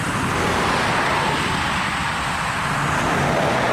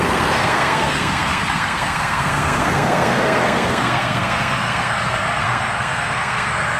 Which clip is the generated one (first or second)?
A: second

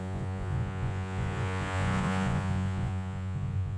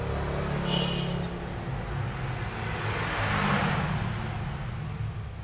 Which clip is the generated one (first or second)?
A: first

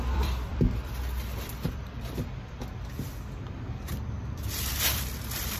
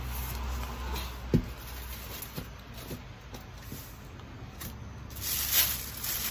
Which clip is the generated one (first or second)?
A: first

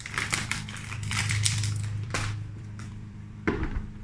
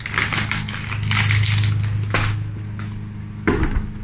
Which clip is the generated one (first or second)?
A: first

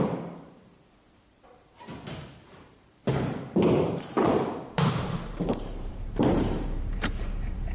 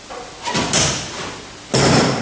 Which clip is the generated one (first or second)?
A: first